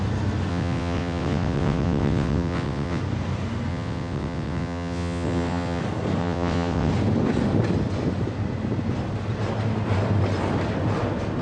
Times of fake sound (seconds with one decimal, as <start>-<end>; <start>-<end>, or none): 0.5-3.0; 3.7-5.8; 6.2-6.9